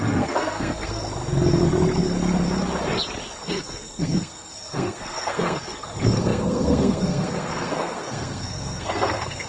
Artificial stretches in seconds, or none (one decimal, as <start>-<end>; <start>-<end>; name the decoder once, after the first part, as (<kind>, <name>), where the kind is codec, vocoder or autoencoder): 0.0-1.0 (codec, SNAC); 3.5-9.5